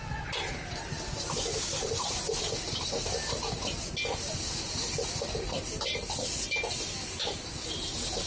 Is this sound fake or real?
real